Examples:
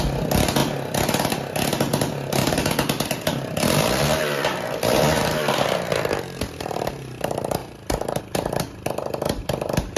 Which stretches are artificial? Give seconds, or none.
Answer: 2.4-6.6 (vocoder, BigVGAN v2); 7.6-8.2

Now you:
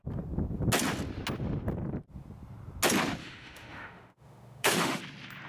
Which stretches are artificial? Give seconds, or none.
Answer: 3.2-5.0 (autoencoder, DAC-VAE)